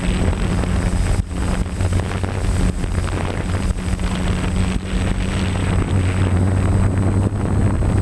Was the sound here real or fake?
real